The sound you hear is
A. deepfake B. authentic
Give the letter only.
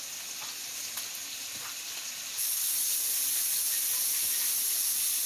A